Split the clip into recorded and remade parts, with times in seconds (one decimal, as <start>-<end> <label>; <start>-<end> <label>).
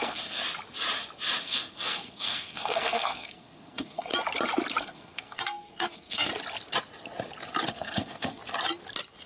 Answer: 0.0-0.4 remade; 0.4-1.4 recorded; 1.4-4.1 remade; 4.1-4.8 recorded; 4.8-6.3 remade; 6.3-7.7 recorded; 7.7-8.4 remade; 8.4-9.3 recorded